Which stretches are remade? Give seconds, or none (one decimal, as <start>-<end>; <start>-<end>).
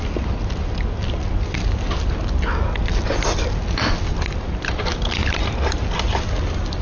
none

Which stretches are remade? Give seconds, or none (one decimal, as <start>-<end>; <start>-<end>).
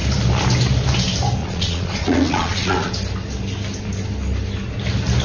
1.4-2.9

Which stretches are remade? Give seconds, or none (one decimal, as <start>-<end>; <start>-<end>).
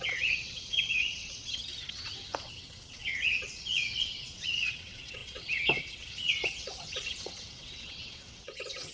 0.0-8.9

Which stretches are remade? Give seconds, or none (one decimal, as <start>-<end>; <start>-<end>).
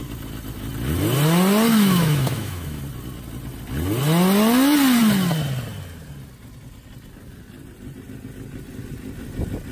1.7-2.8